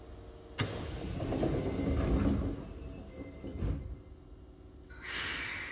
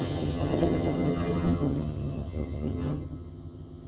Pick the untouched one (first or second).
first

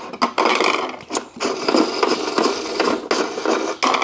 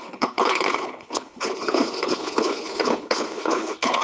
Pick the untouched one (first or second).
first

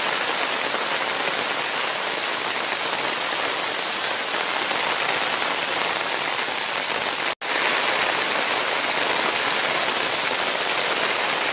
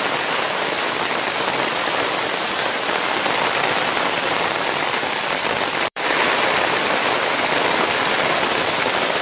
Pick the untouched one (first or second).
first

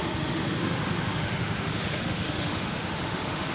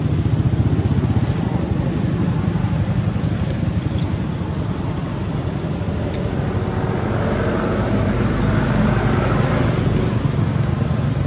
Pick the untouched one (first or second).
second